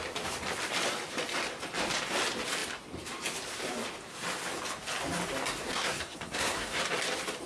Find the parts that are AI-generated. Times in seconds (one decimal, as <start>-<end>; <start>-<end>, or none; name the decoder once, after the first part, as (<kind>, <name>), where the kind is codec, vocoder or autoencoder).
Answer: 5.6-6.8 (codec, SNAC)